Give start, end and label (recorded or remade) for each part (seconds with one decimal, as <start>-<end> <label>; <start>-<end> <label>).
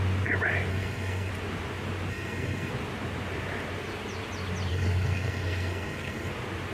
0.0-0.7 recorded; 0.7-1.3 remade; 1.3-2.1 recorded; 2.1-2.7 remade; 2.7-4.7 recorded; 4.7-6.3 remade; 6.3-6.7 recorded